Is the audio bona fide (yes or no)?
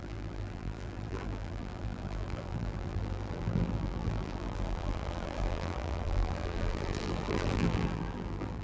no